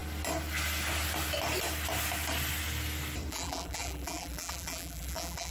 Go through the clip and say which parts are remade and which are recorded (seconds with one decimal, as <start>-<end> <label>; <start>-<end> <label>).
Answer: 0.0-3.3 recorded; 3.3-5.5 remade